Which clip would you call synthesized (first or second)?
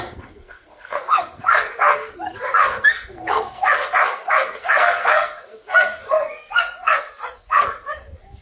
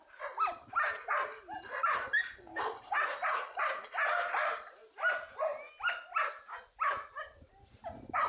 first